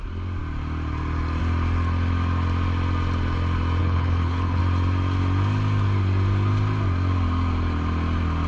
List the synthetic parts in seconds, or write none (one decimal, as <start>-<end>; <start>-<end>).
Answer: 3.8-4.6

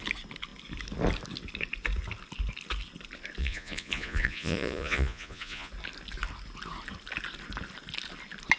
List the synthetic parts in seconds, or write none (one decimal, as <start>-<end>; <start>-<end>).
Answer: 3.4-5.7

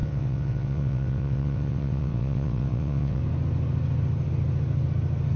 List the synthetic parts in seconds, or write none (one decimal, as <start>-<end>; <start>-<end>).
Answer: 0.0-3.2